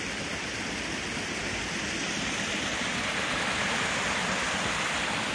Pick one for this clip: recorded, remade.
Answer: recorded